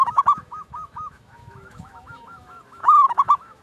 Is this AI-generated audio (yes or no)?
yes